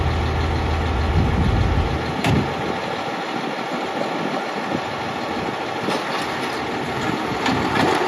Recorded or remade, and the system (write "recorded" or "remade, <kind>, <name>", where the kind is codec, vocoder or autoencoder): recorded